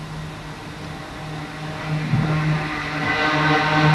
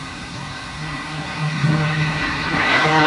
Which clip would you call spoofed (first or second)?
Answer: second